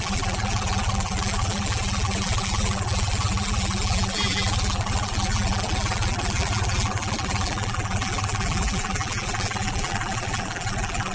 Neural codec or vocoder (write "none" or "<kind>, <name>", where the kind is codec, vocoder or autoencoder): vocoder, BigVGAN v2